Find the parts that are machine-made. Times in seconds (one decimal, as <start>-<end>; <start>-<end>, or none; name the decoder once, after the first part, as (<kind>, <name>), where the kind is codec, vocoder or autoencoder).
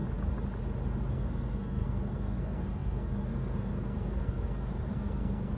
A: 1.1-5.6 (codec, SNAC)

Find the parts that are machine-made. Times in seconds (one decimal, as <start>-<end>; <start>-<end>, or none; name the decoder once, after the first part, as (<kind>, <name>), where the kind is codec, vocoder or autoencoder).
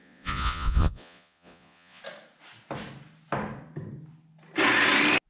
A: 0.0-2.0 (vocoder, Vocos)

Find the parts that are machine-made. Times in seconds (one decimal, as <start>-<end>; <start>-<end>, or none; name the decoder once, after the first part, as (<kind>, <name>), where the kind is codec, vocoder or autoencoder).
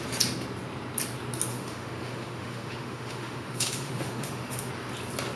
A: 1.5-4.7 (autoencoder, DAC-VAE)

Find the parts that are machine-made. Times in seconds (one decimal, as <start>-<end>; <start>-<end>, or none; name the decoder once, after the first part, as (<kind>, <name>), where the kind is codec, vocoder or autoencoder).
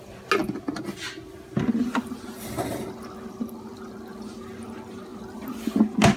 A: none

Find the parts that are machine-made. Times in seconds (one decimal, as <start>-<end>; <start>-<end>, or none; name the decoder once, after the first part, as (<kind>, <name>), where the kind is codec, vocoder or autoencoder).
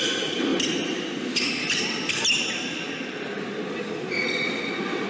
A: none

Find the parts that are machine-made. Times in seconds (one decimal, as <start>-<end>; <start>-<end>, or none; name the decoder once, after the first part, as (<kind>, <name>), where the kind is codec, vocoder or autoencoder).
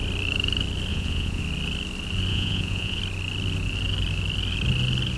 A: 0.9-1.4 (vocoder, Vocos); 2.3-3.0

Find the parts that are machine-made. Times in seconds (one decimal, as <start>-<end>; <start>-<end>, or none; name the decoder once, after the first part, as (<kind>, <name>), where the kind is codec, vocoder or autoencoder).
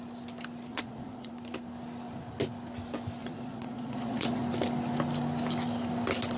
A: 0.7-1.3 (vocoder, Vocos); 3.2-4.4